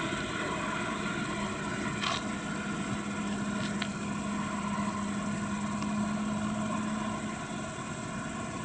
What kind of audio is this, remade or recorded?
recorded